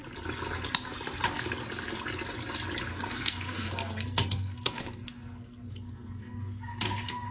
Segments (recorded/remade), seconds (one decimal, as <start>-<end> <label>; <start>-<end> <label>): 0.0-2.9 recorded; 2.9-7.3 remade